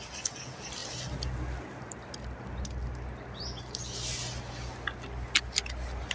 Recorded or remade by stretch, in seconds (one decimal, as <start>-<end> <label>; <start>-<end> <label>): 0.0-6.1 recorded